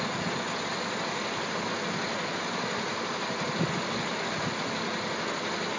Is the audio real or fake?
real